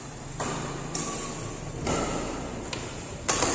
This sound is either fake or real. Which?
real